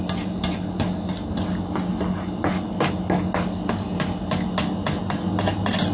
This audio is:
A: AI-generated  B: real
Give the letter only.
B